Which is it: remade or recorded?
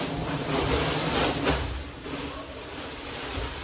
recorded